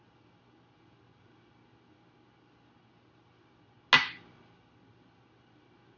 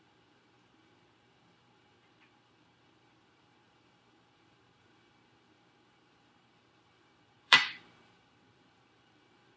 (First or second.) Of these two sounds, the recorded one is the first